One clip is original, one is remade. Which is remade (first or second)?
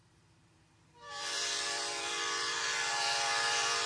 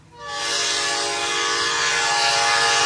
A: first